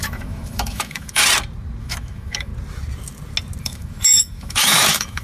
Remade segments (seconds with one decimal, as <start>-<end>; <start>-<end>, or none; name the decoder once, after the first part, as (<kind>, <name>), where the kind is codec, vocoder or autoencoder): 0.0-1.2 (autoencoder, DAC-VAE); 1.8-2.5; 3.6-5.2